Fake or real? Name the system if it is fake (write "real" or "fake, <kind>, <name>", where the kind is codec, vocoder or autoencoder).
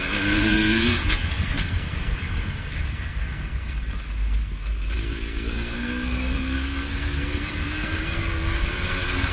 fake, codec, SNAC